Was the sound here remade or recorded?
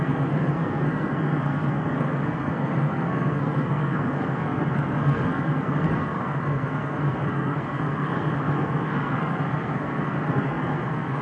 remade